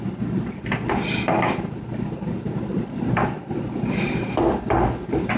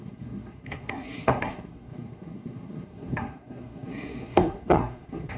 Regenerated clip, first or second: second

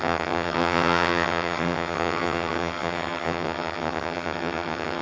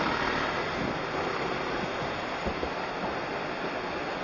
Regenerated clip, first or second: first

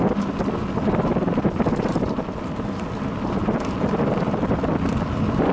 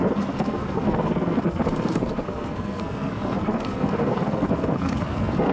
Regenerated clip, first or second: second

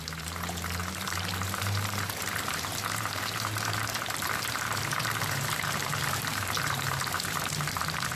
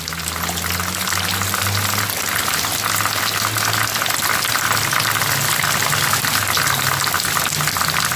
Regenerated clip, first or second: first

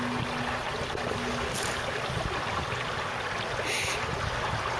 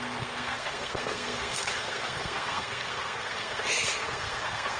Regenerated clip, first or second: second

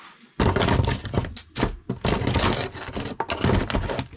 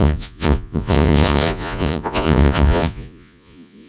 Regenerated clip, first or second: second